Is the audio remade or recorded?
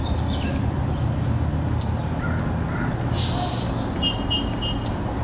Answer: recorded